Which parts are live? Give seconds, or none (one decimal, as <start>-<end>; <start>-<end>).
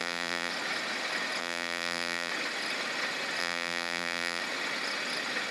0.5-1.4; 2.3-3.4; 4.4-5.5